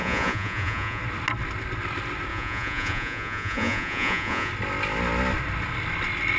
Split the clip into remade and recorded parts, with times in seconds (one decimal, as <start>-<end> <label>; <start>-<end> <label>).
0.0-1.0 remade; 1.0-2.3 recorded; 2.3-4.5 remade; 4.5-6.4 recorded